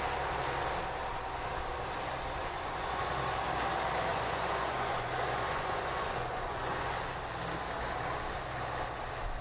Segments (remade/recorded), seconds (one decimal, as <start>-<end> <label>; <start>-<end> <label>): 0.0-2.4 recorded; 2.4-3.1 remade; 3.1-4.1 recorded; 4.1-6.9 remade; 6.9-9.4 recorded